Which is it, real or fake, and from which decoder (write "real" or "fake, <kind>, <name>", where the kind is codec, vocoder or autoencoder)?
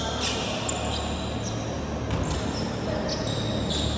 real